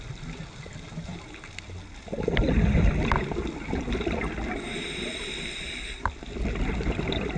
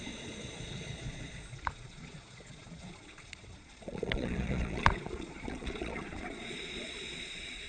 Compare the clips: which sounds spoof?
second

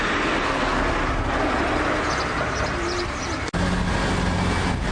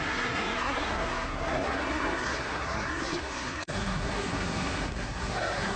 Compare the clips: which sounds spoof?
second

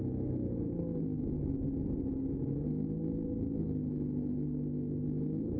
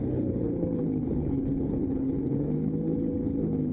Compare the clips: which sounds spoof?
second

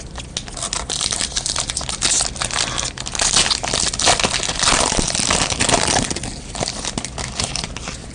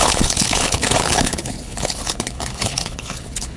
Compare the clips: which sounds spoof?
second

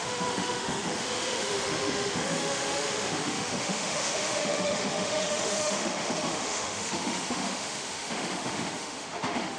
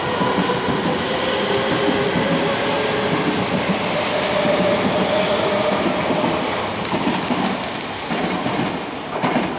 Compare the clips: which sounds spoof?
first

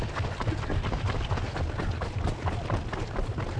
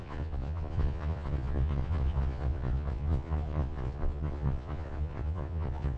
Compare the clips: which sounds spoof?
second